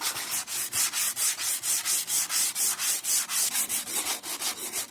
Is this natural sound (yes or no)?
yes